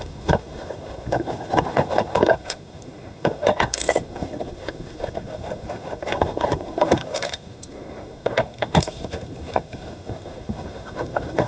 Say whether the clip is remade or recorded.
remade